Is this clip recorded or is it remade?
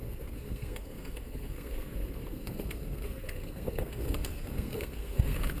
remade